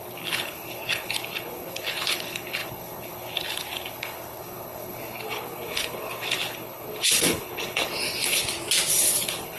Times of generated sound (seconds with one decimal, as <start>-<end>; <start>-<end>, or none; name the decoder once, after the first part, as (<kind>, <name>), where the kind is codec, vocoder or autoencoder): 0.0-8.4 (codec, HILCodec); 8.9-9.6